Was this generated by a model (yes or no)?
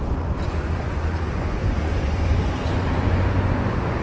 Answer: yes